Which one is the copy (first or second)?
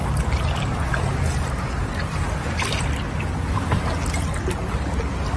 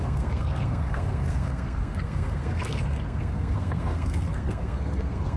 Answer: second